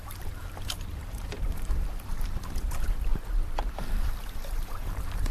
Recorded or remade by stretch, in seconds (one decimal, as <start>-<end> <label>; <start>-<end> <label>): 0.0-3.1 remade; 3.1-3.8 recorded; 3.8-5.3 remade